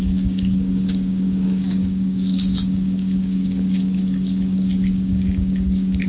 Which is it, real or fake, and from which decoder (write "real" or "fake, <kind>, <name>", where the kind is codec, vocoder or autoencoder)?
fake, codec, DAC